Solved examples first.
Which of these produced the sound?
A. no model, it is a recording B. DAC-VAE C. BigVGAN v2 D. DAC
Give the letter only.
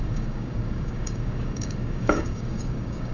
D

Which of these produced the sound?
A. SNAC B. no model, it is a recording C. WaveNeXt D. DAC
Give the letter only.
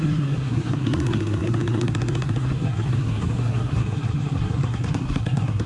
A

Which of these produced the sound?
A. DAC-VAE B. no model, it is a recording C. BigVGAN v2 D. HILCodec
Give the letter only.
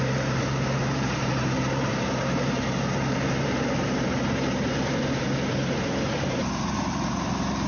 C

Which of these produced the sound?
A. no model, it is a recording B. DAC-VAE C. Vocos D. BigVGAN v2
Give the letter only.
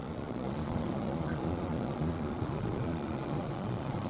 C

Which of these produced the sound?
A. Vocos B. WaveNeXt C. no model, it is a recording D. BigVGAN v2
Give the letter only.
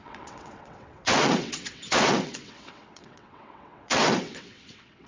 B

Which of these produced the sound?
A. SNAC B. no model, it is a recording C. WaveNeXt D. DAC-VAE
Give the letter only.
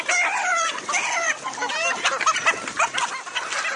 B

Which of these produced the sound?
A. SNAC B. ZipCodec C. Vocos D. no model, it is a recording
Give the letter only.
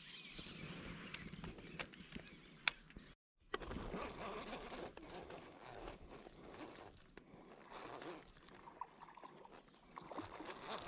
D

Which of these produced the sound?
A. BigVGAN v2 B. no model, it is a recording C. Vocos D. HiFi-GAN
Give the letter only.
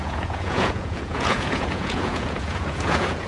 C